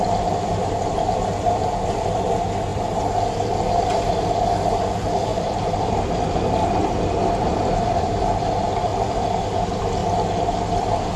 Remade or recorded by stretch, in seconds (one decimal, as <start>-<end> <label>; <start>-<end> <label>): 0.0-8.9 remade; 8.9-9.4 recorded; 9.4-10.0 remade; 10.0-11.2 recorded